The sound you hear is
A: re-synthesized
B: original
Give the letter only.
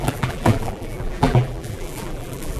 A